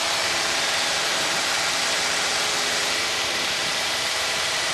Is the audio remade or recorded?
remade